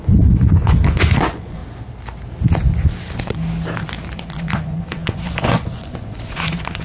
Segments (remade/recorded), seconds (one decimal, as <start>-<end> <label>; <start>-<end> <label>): 0.0-1.6 remade; 1.6-4.2 recorded; 4.2-6.8 remade